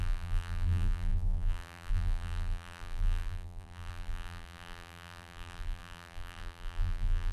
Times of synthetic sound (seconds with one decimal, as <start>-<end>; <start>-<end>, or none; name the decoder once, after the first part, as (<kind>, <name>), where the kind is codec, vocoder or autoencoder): 0.0-7.3 (vocoder, BigVGAN v2)